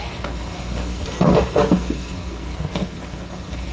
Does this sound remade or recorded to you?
remade